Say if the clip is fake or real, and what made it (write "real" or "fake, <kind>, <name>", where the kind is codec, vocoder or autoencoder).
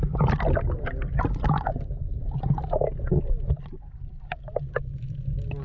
real